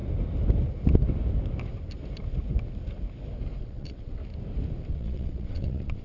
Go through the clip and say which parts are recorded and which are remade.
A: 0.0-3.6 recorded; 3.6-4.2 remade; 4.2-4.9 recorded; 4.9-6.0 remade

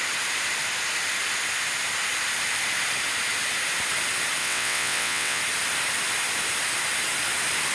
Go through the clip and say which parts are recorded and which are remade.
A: 0.0-4.4 recorded; 4.4-5.4 remade; 5.4-7.7 recorded